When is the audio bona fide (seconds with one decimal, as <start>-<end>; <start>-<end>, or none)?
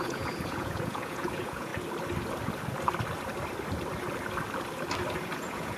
1.7-5.2